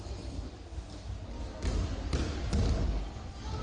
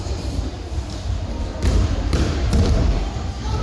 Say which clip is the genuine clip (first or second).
first